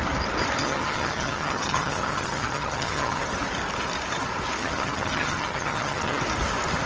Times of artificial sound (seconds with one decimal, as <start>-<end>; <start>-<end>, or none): 0.6-3.2; 4.6-6.2